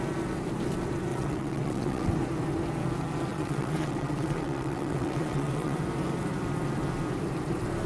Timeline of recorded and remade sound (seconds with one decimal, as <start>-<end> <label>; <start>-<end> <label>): 0.0-1.1 recorded; 1.1-2.1 remade; 2.1-3.3 recorded; 3.3-5.8 remade; 5.8-7.9 recorded